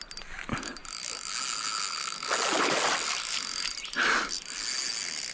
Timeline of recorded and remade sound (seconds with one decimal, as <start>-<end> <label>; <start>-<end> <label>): 0.0-5.3 recorded